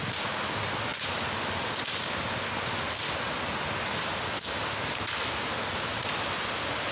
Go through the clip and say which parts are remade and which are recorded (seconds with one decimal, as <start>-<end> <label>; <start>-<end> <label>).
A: 0.0-6.9 recorded